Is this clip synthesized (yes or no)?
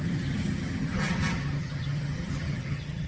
yes